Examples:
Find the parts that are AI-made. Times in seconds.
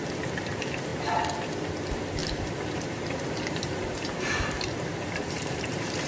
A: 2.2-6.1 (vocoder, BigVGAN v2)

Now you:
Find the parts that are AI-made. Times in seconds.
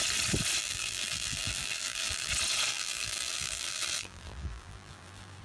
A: 0.6-2.3 (vocoder, BigVGAN v2); 2.7-5.4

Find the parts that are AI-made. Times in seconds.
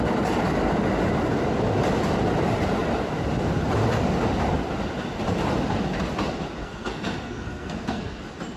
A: 6.6-8.2 (codec, SNAC)